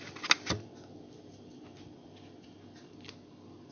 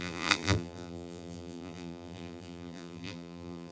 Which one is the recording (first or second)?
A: first